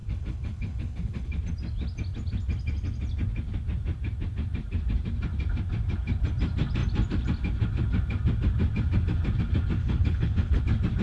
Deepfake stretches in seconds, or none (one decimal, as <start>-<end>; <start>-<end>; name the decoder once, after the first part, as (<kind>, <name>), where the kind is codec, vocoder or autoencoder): 0.0-1.4 (codec, HILCodec); 9.8-10.6